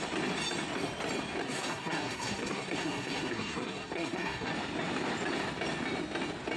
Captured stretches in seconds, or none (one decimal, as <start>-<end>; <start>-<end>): 0.0-1.4; 4.5-6.6